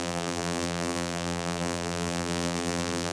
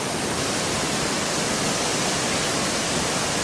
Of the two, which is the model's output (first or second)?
first